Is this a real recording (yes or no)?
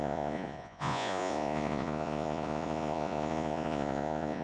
no